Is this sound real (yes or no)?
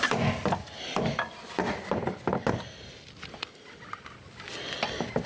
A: yes